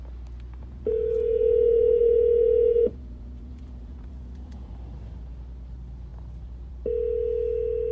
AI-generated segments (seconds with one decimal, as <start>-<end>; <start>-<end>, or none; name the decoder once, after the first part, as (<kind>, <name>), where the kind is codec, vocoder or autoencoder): 0.6-4.7 (vocoder, Vocos)